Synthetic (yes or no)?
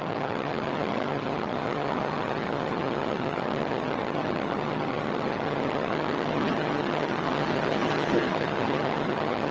yes